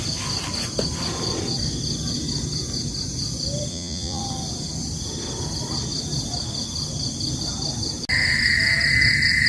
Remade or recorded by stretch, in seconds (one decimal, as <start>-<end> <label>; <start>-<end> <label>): 0.0-3.7 recorded; 3.7-4.2 remade; 4.2-9.5 recorded